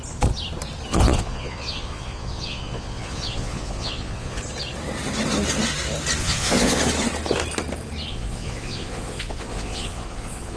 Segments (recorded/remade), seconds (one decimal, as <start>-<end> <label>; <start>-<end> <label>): 0.0-0.9 recorded; 0.9-4.4 remade; 4.4-6.2 recorded; 6.2-6.8 remade; 6.8-8.1 recorded; 8.1-10.6 remade